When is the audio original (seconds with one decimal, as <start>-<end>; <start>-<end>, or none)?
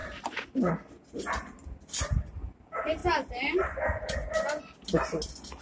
0.0-5.6